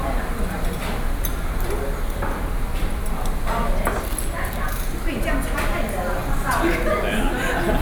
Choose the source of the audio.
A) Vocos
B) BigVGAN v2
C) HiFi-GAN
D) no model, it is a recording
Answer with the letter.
D